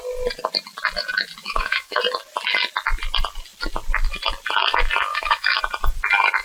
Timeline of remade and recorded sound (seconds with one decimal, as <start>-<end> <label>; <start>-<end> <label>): 0.0-1.4 recorded; 1.4-2.0 remade; 2.0-5.1 recorded; 5.1-5.6 remade; 5.6-6.4 recorded